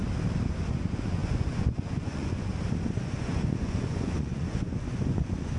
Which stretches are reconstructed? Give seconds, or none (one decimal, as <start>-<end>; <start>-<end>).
0.7-2.5; 3.0-5.6